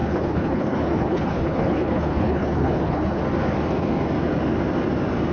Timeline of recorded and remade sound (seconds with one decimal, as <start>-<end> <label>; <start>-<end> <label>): 0.0-3.2 remade; 3.2-5.3 recorded